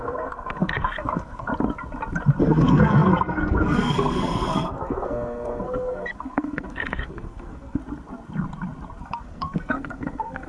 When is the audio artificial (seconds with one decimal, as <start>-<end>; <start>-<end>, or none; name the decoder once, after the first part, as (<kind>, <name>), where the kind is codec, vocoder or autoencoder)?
0.0-1.5 (codec, SNAC); 2.4-7.8; 9.0-10.5